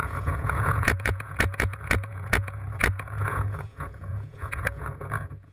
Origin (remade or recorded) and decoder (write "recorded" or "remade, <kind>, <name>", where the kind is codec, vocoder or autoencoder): remade, vocoder, Vocos